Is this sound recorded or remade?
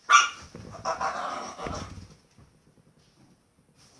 recorded